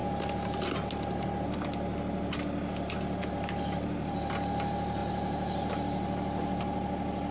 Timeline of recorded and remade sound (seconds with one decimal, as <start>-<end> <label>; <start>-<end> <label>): 0.0-7.3 recorded